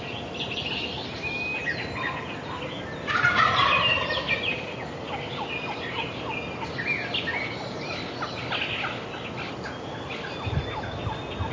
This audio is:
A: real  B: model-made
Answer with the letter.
A